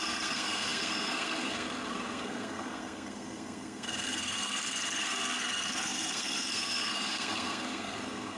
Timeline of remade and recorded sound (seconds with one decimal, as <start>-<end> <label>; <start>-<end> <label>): 0.0-8.4 remade